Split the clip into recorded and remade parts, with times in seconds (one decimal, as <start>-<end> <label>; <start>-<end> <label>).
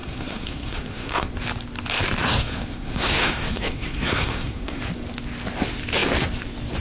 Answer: 0.0-1.3 remade; 1.3-2.2 recorded; 2.2-4.8 remade; 4.8-6.8 recorded